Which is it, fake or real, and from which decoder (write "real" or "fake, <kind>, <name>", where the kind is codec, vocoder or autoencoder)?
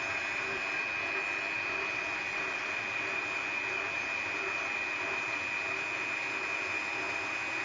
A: real